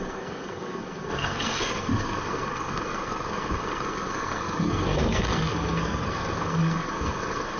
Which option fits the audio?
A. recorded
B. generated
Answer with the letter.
B